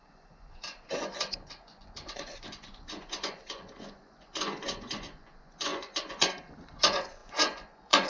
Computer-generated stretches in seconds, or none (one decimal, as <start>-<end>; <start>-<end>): 0.0-8.1